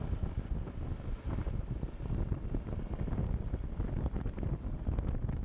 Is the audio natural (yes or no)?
yes